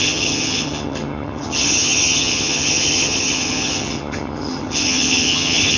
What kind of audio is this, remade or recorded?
remade